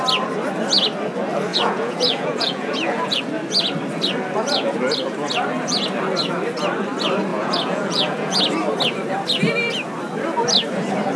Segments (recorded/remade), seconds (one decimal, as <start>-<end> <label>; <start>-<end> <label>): 0.0-1.5 recorded; 1.5-3.2 remade; 3.2-7.3 recorded; 7.3-8.4 remade; 8.4-11.2 recorded